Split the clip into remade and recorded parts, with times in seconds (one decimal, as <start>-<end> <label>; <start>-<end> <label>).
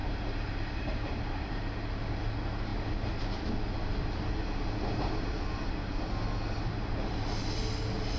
0.0-1.5 remade; 1.5-8.2 recorded